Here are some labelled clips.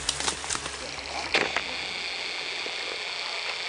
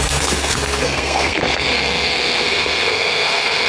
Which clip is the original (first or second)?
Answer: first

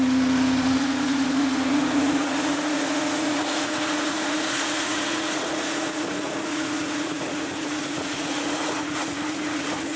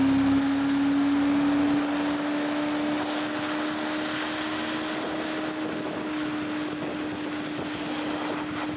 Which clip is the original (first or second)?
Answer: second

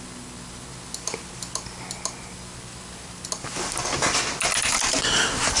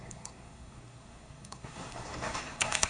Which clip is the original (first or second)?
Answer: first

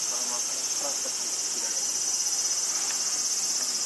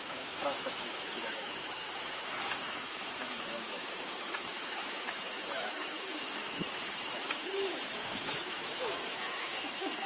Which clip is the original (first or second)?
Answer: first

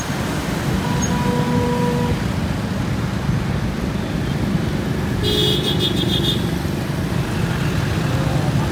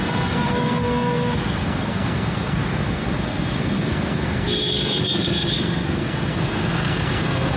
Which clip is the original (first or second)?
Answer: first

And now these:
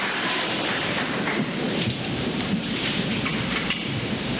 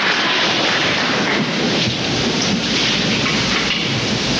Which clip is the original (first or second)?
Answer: second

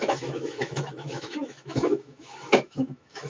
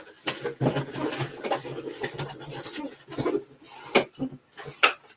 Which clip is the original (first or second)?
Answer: second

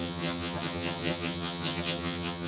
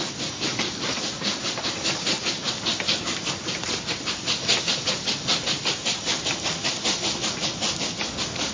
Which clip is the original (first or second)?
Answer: second